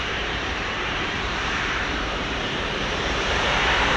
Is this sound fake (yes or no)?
yes